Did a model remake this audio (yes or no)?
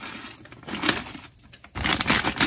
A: no